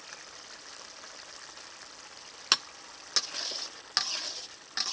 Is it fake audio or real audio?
real